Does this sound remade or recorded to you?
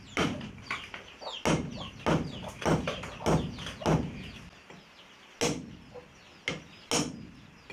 recorded